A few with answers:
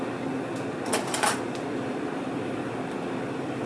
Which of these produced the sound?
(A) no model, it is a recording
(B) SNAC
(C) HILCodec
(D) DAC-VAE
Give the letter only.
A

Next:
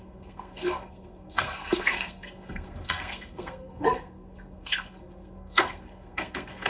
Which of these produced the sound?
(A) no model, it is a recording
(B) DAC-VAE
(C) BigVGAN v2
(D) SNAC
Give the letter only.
D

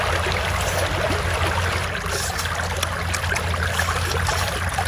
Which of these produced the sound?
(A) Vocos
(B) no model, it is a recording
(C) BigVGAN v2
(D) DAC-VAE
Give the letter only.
B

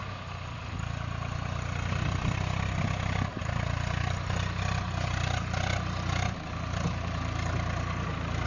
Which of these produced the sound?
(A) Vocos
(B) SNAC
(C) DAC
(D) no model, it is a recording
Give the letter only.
D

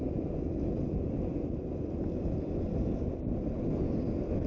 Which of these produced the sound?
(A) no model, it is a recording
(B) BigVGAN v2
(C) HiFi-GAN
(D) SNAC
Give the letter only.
A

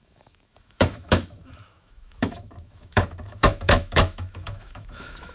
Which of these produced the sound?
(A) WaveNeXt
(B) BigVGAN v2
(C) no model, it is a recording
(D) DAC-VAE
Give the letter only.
D